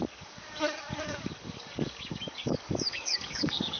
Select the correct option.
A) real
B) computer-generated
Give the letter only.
B